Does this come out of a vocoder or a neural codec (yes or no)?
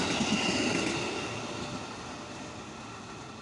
no